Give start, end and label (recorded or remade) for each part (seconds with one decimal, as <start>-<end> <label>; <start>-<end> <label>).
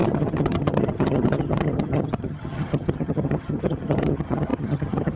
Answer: 0.0-5.2 remade